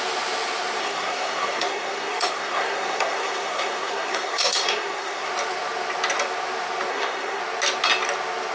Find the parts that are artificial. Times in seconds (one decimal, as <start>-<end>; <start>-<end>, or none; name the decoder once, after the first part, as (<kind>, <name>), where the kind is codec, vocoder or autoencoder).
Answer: 0.8-5.3 (codec, SNAC); 6.9-7.4

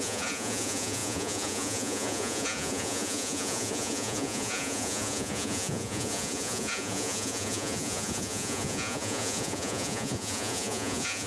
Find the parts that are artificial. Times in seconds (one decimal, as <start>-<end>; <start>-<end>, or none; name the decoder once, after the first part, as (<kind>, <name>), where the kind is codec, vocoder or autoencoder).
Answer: 0.0-11.3 (vocoder, Vocos)

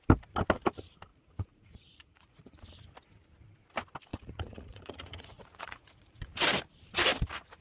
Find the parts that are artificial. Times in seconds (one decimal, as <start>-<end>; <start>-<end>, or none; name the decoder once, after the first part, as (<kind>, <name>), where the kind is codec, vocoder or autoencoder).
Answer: 1.1-2.6 (vocoder, Vocos); 4.1-6.3

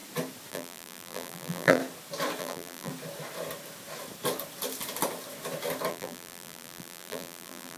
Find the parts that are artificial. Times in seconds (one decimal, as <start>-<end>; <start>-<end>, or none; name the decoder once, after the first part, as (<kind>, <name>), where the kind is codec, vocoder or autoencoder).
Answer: 0.5-1.8 (vocoder, BigVGAN v2); 2.4-2.9; 5.9-7.8

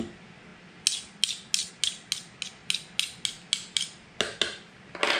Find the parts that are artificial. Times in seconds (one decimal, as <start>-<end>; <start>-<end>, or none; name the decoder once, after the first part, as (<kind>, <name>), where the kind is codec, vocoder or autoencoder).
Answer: none

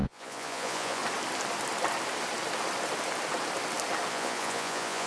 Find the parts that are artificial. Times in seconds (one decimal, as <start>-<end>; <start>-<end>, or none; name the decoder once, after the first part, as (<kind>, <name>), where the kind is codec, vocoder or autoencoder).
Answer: 0.0-1.0 (vocoder, Vocos); 4.1-5.1